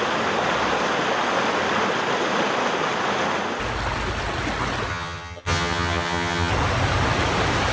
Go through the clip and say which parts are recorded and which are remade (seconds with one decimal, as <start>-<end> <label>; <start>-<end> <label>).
0.0-4.9 recorded; 4.9-6.5 remade; 6.5-7.7 recorded